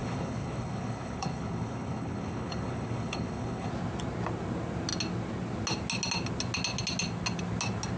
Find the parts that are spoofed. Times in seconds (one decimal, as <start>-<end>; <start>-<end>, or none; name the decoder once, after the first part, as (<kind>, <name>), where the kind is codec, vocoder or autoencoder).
0.0-3.7 (codec, HILCodec)